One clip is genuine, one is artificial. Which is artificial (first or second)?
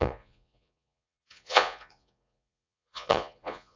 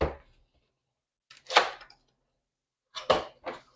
first